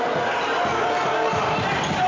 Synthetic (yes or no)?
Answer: no